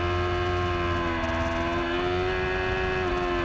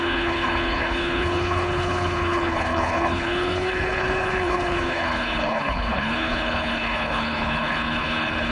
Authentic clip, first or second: first